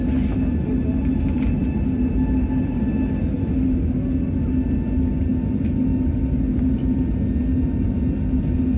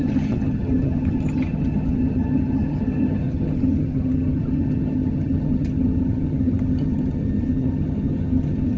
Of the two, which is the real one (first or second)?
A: first